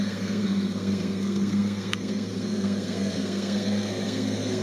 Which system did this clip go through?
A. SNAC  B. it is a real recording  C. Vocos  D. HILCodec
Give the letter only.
A